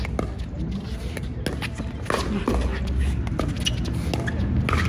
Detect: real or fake real